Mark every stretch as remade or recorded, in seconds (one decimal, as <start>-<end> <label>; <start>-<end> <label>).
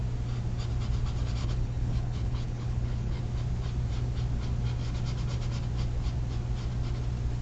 0.0-1.4 recorded; 1.4-3.2 remade; 3.2-7.4 recorded